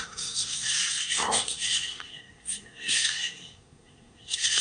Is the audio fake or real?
fake